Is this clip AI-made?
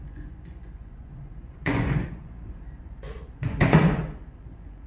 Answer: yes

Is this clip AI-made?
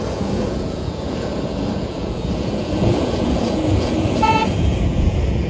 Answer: yes